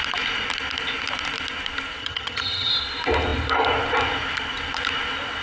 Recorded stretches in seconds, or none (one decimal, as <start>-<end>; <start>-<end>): 0.0-2.0; 2.7-5.4